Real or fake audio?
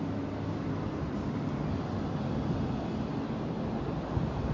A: real